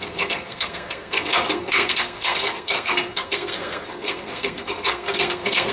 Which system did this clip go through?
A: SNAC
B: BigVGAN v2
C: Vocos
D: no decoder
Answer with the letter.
A